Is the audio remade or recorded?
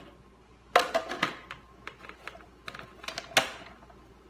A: recorded